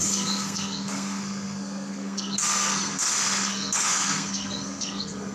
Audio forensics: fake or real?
fake